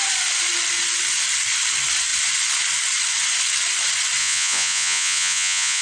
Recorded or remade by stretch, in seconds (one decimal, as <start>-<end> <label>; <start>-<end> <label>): 0.0-4.2 recorded; 4.2-5.8 remade